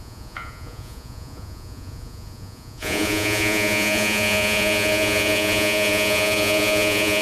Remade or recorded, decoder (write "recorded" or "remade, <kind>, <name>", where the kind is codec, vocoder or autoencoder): remade, vocoder, Vocos